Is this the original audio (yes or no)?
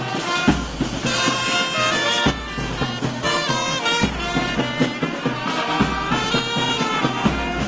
yes